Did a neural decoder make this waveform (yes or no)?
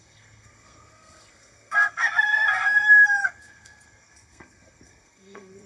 yes